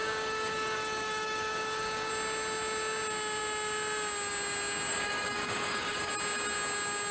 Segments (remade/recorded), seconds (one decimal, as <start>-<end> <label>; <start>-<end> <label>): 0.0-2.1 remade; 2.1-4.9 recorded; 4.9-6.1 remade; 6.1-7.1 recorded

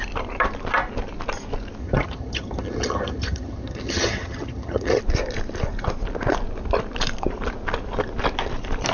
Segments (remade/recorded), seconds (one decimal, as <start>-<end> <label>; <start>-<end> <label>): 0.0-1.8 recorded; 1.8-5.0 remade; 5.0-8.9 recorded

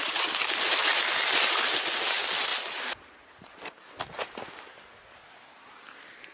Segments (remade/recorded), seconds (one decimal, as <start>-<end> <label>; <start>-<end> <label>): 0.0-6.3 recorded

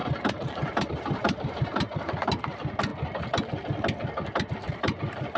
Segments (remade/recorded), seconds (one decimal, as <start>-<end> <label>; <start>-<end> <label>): 0.0-0.9 recorded; 0.9-2.9 remade; 2.9-4.5 recorded; 4.5-5.4 remade

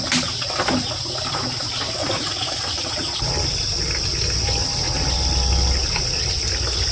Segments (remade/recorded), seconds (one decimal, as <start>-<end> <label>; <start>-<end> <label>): 0.0-2.0 recorded; 2.0-3.3 remade; 3.3-6.9 recorded

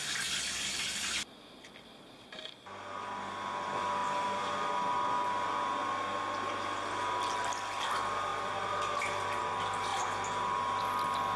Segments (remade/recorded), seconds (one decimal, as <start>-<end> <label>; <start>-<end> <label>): 0.0-11.4 recorded

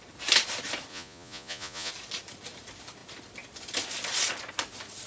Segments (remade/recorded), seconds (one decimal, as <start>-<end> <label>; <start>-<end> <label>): 0.0-0.9 recorded; 0.9-1.9 remade; 1.9-5.1 recorded

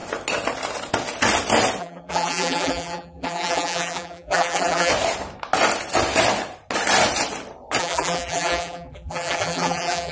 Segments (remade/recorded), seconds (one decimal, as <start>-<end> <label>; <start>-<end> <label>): 0.0-1.8 recorded; 1.8-4.9 remade; 4.9-7.8 recorded; 7.8-10.1 remade